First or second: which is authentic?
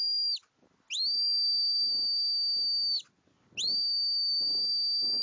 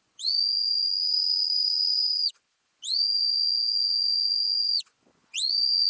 first